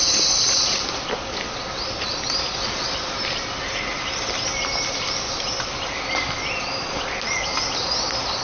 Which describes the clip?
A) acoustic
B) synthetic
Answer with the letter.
A